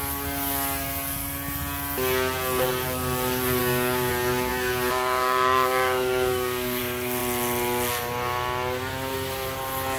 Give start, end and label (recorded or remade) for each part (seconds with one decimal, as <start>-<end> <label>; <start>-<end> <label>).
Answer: 0.0-3.6 recorded; 3.6-4.1 remade; 4.1-4.5 recorded; 4.5-6.8 remade; 6.8-10.0 recorded